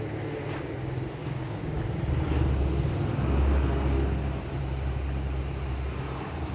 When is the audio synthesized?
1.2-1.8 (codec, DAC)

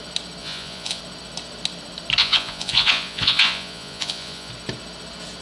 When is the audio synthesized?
0.4-1.0 (vocoder, Vocos); 2.2-4.5

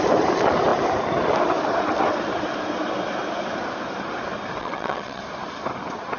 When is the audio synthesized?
4.6-5.2 (vocoder, WaveNeXt)